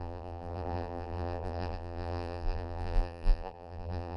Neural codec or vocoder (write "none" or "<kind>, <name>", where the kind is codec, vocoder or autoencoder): vocoder, BigVGAN v2